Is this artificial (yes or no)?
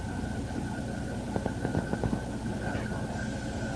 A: no